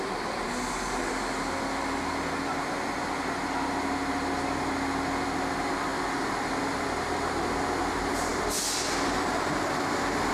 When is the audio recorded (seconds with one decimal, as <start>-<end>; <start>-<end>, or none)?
0.0-10.3

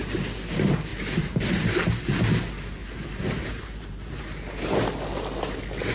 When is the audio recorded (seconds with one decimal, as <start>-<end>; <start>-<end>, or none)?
0.0-0.9; 2.2-2.8; 4.2-5.9

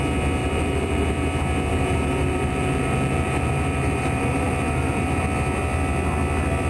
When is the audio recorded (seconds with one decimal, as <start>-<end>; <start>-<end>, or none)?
0.0-0.4; 1.1-1.7; 5.2-6.7

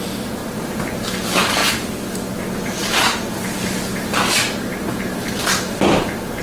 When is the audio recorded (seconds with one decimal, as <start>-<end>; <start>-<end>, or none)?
0.0-0.4; 0.9-6.4

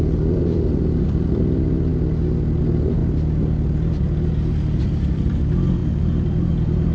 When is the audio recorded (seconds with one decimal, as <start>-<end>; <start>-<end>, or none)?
1.9-2.6; 3.0-4.8; 5.8-6.5

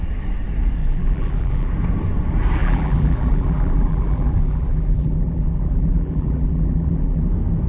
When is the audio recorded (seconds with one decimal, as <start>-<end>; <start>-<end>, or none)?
0.0-0.8; 1.7-2.6; 7.2-7.7

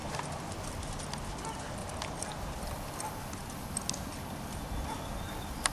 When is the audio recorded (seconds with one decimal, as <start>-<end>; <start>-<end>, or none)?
0.0-1.4; 1.8-5.2